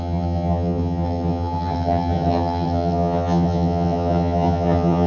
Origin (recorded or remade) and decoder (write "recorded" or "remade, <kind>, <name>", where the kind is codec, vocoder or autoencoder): remade, vocoder, HiFi-GAN